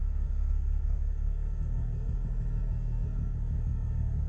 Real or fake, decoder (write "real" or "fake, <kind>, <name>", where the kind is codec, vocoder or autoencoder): fake, codec, SNAC